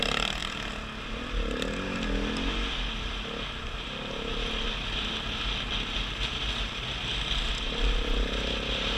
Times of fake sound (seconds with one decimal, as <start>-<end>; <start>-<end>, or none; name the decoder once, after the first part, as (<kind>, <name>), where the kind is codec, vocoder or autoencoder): none